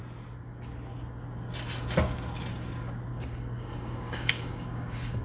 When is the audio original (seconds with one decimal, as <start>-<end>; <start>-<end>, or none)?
0.0-3.1